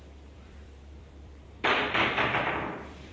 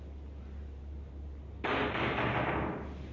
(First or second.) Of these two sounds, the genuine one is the second